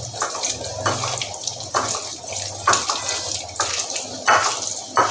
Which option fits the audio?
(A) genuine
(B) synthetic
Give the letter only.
A